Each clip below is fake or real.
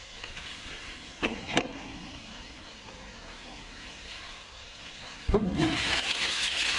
fake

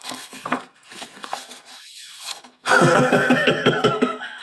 fake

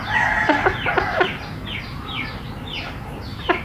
real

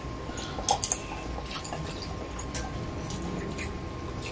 real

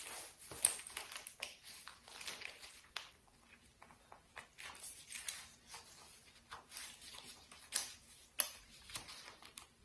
real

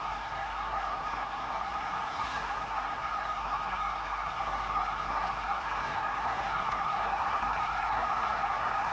fake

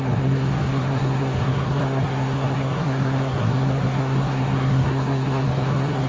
fake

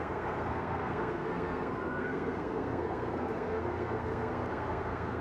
fake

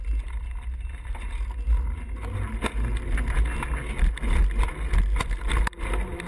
real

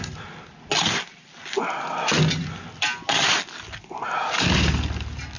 real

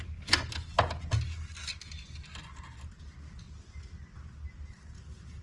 real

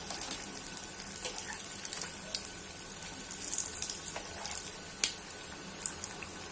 real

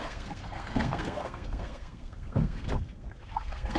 fake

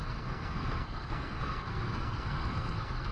fake